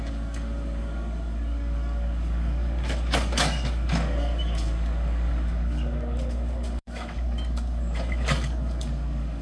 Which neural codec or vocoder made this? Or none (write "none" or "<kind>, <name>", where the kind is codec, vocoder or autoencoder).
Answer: codec, DAC